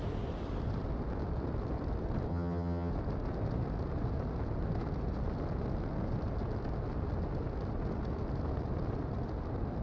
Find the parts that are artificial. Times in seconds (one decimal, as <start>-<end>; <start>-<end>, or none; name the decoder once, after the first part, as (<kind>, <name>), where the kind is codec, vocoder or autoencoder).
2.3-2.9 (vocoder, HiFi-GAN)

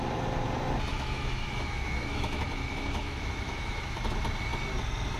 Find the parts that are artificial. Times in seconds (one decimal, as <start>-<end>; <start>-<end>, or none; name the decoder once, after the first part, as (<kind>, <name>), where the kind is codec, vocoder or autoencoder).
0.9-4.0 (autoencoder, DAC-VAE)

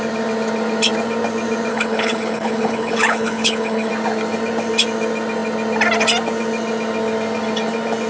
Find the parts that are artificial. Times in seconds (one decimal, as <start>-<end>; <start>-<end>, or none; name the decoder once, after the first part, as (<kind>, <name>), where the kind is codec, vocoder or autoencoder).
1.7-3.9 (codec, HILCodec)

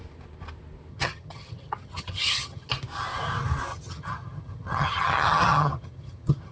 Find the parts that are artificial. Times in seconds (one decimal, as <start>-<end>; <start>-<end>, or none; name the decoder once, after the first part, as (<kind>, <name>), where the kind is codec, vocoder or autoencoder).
0.9-2.7 (vocoder, HiFi-GAN); 3.7-6.5

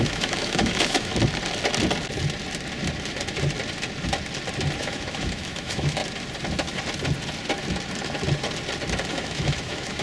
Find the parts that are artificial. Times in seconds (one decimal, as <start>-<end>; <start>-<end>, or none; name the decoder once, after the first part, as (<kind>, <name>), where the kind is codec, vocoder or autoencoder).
0.0-1.1 (autoencoder, DAC-VAE); 4.8-6.0; 9.1-10.0

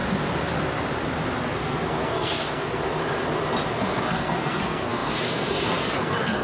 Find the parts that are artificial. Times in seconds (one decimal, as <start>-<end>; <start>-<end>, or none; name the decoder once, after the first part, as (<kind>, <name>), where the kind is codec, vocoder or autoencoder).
1.5-2.8 (codec, SNAC); 3.7-6.4